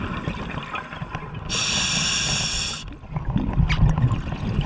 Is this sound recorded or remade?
recorded